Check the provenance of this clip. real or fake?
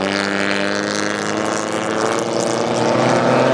real